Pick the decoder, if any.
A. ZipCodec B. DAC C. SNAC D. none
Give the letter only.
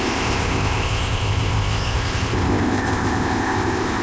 A